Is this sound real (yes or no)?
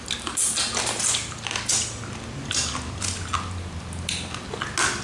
yes